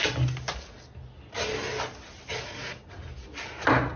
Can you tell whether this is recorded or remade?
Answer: recorded